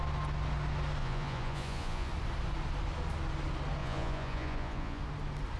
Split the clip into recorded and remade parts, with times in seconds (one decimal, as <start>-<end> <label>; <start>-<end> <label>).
0.0-1.0 recorded; 1.0-2.1 remade; 2.1-3.8 recorded; 3.8-5.0 remade; 5.0-5.6 recorded